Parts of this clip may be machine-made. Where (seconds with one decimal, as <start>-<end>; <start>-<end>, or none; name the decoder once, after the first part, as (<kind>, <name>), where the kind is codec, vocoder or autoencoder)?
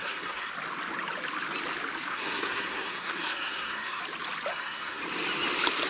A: 0.0-0.5 (codec, SNAC); 2.1-4.0; 4.5-5.0